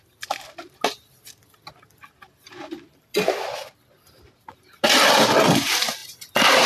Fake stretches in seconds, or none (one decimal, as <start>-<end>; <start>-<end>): none